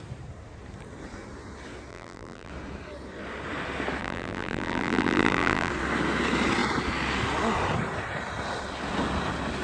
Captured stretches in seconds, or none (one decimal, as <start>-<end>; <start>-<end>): 0.0-1.9; 2.5-4.0; 5.7-9.6